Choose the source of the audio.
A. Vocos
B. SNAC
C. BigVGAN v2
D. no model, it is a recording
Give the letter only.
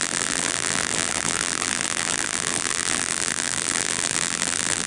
C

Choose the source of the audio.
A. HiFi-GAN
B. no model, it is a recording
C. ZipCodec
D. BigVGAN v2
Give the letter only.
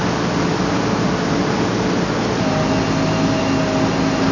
B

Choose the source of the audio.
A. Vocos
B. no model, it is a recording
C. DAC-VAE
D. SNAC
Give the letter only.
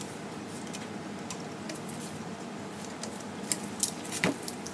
B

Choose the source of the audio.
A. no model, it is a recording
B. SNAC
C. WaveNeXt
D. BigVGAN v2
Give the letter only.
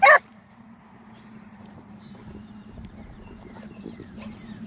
D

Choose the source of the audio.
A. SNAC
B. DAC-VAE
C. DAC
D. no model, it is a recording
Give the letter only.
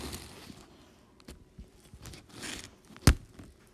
D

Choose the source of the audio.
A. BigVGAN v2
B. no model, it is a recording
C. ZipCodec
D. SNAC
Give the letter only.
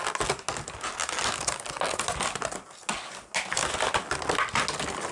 B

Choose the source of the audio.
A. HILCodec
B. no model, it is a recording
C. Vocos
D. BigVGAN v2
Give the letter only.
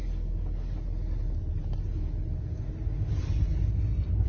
B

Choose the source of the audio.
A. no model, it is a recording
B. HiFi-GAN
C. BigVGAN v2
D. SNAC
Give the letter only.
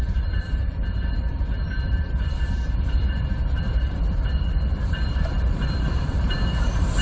C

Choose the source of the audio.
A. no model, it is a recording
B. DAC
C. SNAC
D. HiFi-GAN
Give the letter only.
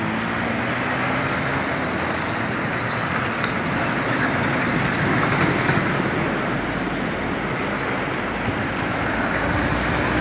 A